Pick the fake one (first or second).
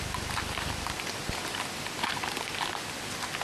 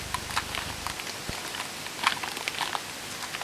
first